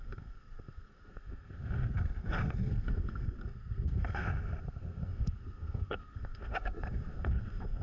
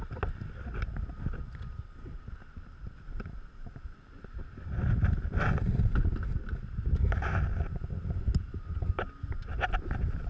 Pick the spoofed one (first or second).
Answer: first